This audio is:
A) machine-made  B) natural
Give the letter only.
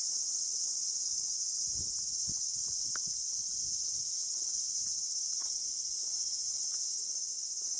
B